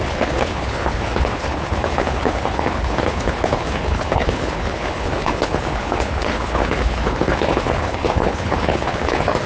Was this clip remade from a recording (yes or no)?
yes